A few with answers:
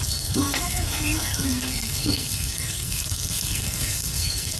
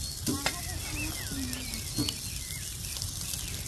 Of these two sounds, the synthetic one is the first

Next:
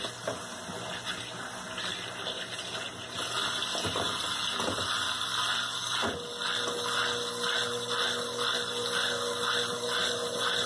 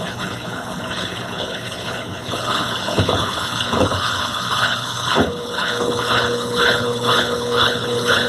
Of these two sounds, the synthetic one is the second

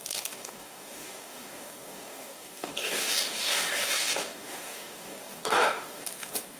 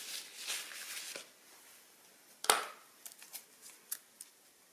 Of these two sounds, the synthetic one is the first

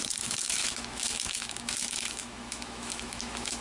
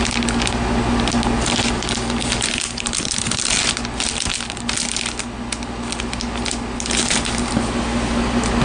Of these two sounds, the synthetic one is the first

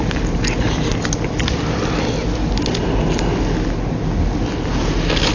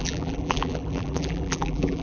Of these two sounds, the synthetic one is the second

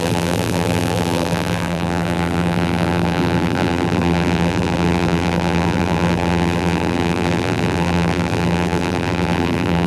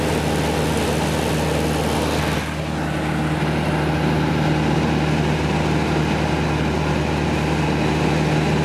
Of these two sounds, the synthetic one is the first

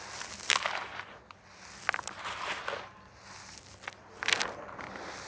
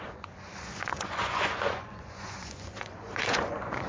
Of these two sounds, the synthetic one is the second